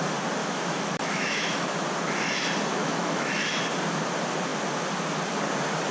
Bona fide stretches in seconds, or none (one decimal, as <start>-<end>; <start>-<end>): 0.0-0.4; 1.7-2.8; 3.6-5.9